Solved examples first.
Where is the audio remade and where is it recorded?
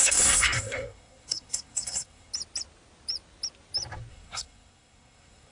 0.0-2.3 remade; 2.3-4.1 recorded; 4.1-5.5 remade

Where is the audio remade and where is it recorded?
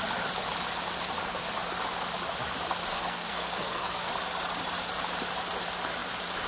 0.0-2.9 recorded; 2.9-4.1 remade; 4.1-6.5 recorded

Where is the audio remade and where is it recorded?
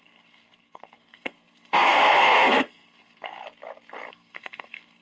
0.0-3.4 remade; 3.4-4.1 recorded; 4.1-5.0 remade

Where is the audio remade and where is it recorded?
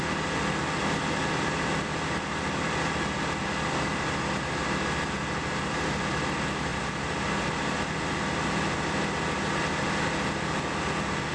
0.0-11.3 recorded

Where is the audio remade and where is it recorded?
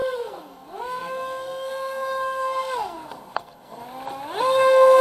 0.0-3.8 remade; 3.8-4.4 recorded; 4.4-5.0 remade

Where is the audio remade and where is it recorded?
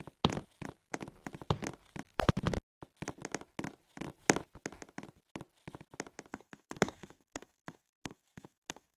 0.0-6.3 recorded; 6.3-9.0 remade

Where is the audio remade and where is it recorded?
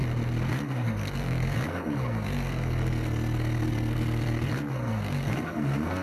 0.0-0.5 recorded; 0.5-6.0 remade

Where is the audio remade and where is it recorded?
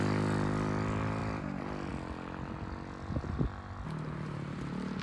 0.0-5.0 recorded